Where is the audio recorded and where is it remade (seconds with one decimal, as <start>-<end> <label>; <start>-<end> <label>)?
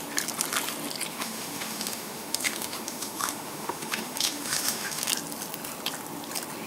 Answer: 0.0-1.1 recorded; 1.1-5.1 remade; 5.1-6.7 recorded